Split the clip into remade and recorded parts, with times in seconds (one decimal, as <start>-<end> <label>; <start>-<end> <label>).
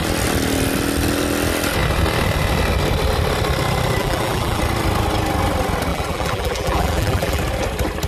0.0-4.0 recorded; 4.0-4.6 remade; 4.6-5.9 recorded; 5.9-7.4 remade; 7.4-8.1 recorded